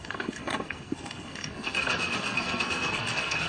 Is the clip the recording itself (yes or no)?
no